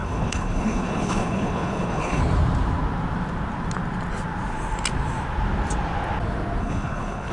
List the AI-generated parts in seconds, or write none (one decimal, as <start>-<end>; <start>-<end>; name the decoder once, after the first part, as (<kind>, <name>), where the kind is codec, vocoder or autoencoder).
0.0-2.2 (codec, HILCodec); 6.6-7.3